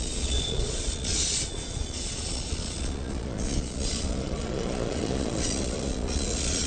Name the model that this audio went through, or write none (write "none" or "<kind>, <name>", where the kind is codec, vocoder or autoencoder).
vocoder, Vocos